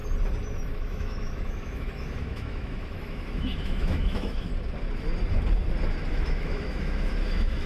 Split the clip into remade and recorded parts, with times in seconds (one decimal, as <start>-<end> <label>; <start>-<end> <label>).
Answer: 0.0-0.8 recorded; 0.8-4.5 remade; 4.5-6.1 recorded; 6.1-7.7 remade